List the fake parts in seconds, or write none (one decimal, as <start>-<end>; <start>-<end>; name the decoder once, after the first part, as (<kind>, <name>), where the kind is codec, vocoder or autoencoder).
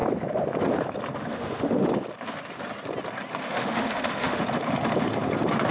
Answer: 1.3-1.9 (autoencoder, DAC-VAE); 3.4-4.4